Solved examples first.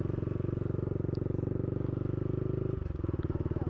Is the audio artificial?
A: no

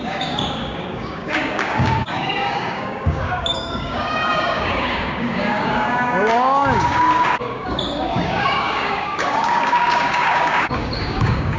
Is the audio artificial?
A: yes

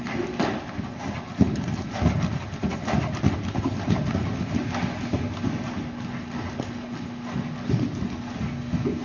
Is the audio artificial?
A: no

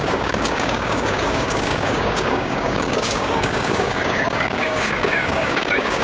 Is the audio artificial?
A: yes